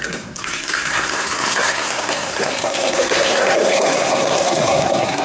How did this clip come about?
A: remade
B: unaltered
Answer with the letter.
A